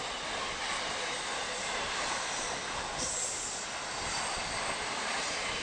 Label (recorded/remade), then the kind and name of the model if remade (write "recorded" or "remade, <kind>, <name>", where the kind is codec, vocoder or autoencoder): recorded